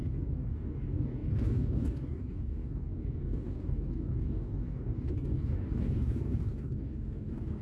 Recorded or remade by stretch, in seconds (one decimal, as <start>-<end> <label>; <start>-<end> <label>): 0.0-7.6 remade